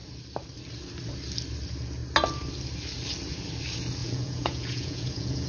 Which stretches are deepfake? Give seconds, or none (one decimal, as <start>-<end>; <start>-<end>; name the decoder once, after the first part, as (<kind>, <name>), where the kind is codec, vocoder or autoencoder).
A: 4.0-5.5 (vocoder, Vocos)